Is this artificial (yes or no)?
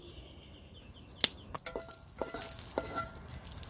no